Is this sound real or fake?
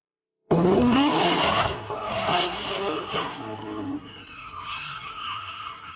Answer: fake